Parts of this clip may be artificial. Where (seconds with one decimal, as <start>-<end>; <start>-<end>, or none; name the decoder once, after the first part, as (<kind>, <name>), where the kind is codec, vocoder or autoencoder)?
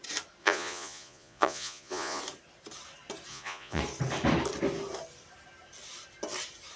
0.4-2.2 (vocoder, Vocos); 3.3-3.8